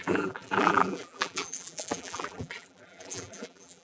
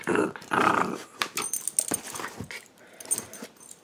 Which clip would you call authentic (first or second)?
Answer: second